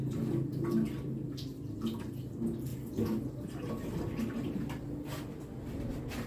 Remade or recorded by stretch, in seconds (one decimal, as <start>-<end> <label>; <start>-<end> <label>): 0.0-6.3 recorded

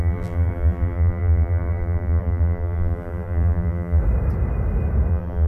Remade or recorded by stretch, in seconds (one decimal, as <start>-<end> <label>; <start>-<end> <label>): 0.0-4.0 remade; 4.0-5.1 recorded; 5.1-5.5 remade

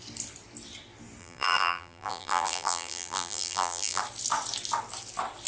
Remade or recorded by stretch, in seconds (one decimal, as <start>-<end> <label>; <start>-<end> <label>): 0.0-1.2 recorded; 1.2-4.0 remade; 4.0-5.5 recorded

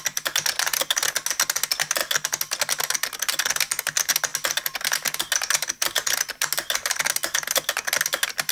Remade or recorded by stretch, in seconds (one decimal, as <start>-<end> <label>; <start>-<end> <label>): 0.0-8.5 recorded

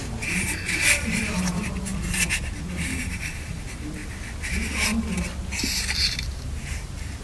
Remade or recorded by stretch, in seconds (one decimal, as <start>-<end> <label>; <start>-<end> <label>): 0.0-1.9 remade; 1.9-3.0 recorded; 3.0-4.0 remade; 4.0-4.5 recorded; 4.5-4.9 remade; 4.9-6.0 recorded; 6.0-7.2 remade